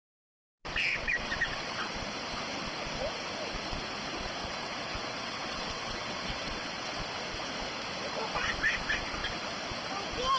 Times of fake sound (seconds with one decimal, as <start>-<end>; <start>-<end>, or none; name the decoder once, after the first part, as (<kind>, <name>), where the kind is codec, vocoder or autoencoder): 0.9-1.9 (vocoder, WaveNeXt); 4.4-7.0